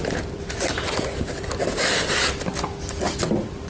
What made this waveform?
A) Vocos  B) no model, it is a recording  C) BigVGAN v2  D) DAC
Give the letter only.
B